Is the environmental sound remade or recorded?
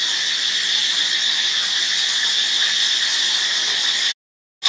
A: recorded